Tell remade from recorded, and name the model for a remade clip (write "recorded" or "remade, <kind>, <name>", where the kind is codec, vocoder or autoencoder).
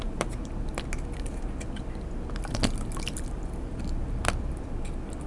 recorded